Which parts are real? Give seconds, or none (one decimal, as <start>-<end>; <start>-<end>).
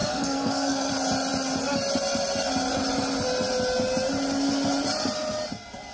0.9-5.9